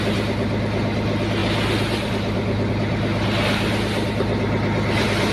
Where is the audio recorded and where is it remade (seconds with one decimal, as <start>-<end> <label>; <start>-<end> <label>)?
0.0-5.3 recorded